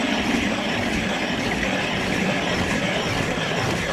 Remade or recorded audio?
recorded